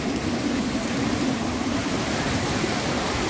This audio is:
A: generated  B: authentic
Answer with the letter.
B